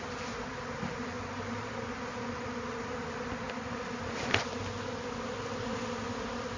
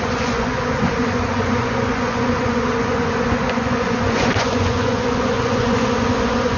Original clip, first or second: first